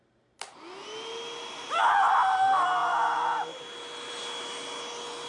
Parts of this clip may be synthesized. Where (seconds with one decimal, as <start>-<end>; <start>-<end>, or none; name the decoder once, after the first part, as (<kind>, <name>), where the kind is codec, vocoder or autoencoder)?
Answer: none